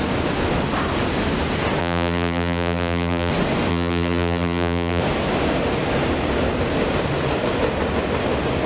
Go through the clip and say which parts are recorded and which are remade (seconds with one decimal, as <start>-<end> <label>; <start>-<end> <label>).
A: 0.0-1.8 recorded; 1.8-3.3 remade; 3.3-3.7 recorded; 3.7-5.0 remade; 5.0-8.7 recorded